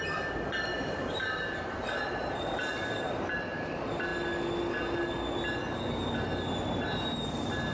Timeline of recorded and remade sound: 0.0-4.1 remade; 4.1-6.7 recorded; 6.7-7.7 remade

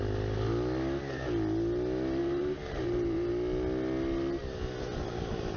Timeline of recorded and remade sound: 0.0-2.2 recorded; 2.2-3.3 remade; 3.3-5.6 recorded

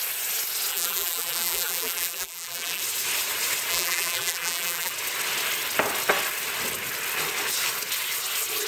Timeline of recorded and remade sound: 0.0-0.7 recorded; 0.7-2.8 remade; 2.8-3.7 recorded; 3.7-4.9 remade; 4.9-8.7 recorded

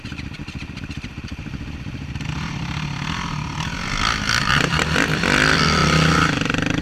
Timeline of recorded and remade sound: 0.0-5.8 remade; 5.8-6.8 recorded

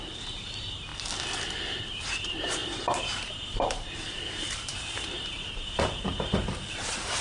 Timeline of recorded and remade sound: 0.0-0.9 remade; 0.9-1.8 recorded; 1.8-7.2 remade

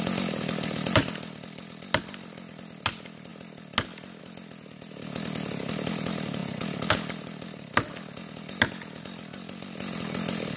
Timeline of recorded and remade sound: 0.0-10.6 recorded

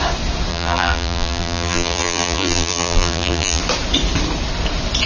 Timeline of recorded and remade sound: 0.0-0.5 recorded; 0.5-3.6 remade; 3.6-5.1 recorded